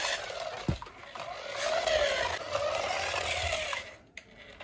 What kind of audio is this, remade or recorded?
recorded